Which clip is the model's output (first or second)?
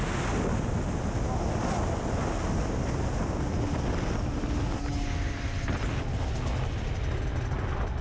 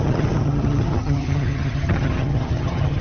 second